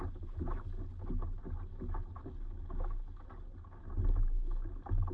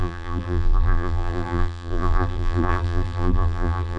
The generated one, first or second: second